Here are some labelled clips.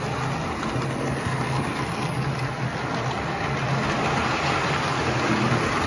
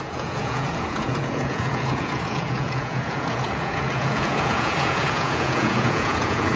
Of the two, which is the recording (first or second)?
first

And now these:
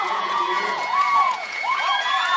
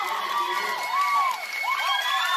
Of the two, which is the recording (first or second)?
second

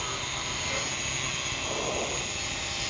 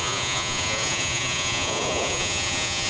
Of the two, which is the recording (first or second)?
first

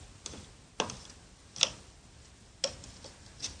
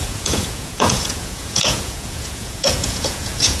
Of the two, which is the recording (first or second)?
first